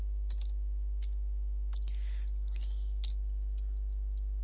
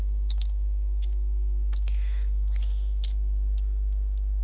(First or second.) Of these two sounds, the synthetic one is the second